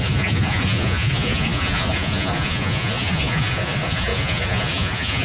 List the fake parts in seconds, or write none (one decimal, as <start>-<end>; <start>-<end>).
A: 0.0-5.2